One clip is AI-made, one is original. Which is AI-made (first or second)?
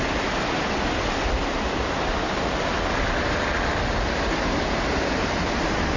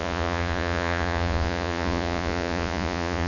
second